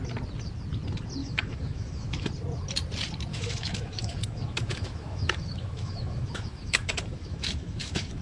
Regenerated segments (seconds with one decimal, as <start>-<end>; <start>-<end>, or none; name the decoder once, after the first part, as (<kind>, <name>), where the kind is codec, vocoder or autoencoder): 1.2-2.3 (autoencoder, DAC-VAE); 3.3-8.2